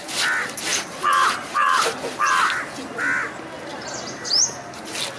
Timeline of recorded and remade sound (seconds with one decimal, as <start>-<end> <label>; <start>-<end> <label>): 0.0-0.7 recorded; 0.7-2.3 remade; 2.3-3.7 recorded; 3.7-4.4 remade; 4.4-5.2 recorded